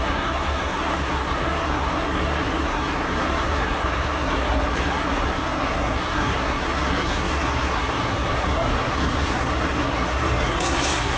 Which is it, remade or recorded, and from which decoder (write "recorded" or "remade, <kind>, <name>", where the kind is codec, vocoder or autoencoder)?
remade, codec, SNAC